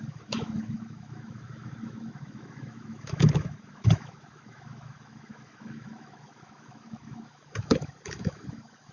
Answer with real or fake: fake